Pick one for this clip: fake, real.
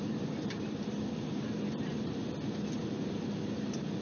real